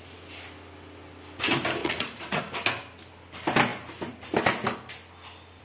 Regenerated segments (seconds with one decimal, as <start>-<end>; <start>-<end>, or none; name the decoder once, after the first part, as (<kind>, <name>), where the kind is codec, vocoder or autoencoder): 1.8-2.4 (vocoder, Vocos)